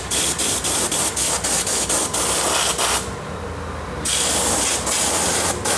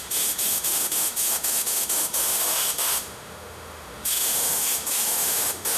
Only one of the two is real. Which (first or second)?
first